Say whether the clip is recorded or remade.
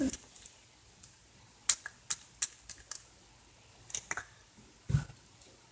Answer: recorded